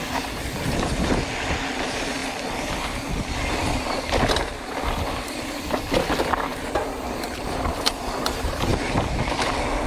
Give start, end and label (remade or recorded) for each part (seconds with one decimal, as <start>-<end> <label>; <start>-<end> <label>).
0.0-9.9 recorded